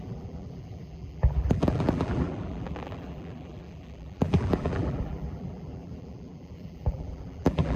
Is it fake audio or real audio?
fake